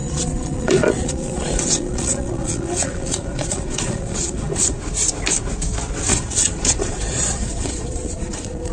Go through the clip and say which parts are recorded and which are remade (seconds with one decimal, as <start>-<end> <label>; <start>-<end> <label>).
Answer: 0.0-4.8 remade; 4.8-6.1 recorded; 6.1-8.7 remade